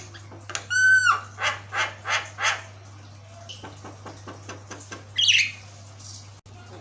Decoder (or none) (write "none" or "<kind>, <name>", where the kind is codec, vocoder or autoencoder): none